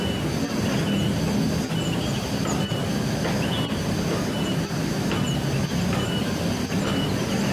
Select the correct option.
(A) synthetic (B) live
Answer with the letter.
B